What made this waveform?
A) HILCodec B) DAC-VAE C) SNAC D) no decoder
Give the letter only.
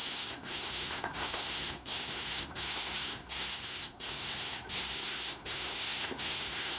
C